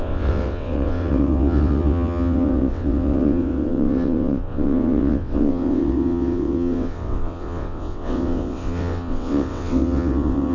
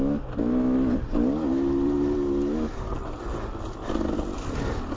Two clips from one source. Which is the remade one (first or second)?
first